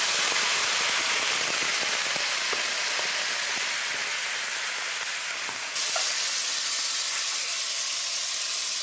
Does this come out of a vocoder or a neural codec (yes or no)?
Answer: no